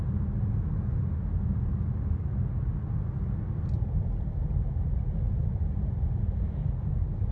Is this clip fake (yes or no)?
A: no